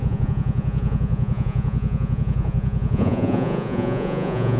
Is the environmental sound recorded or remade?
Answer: remade